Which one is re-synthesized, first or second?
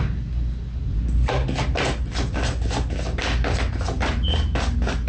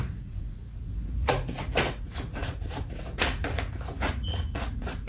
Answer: second